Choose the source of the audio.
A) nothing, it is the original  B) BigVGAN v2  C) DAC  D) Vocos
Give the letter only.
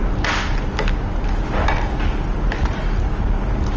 A